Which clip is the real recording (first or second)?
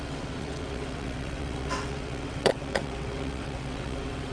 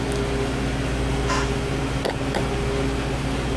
second